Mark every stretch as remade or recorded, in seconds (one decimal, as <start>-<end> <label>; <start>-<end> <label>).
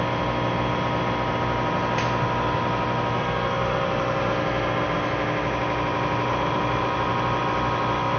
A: 0.0-8.2 recorded